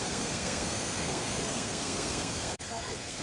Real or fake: fake